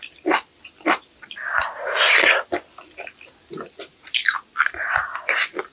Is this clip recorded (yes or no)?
yes